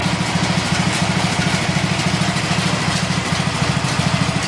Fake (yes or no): no